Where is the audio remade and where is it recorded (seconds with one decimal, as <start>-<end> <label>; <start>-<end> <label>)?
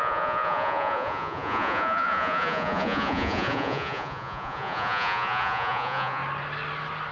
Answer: 0.0-6.2 remade; 6.2-7.1 recorded